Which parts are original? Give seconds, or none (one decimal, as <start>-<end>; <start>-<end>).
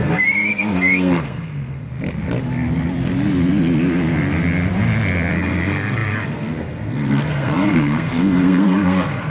1.9-5.3